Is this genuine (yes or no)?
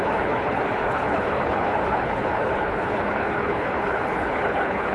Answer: no